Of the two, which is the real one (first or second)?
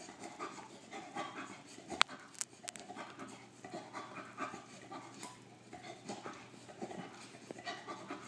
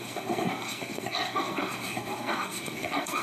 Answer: first